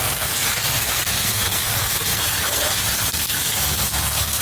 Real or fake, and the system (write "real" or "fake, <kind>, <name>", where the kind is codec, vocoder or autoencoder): fake, codec, SNAC